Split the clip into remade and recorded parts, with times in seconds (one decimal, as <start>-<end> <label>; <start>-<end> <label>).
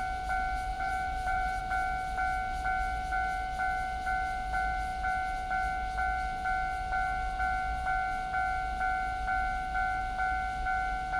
0.0-0.7 recorded; 0.7-1.6 remade; 1.6-11.2 recorded